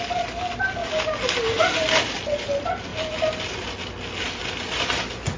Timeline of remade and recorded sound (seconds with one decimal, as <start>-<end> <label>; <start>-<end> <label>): 0.0-5.4 recorded